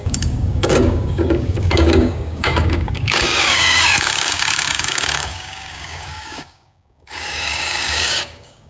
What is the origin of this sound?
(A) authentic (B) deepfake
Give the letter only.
B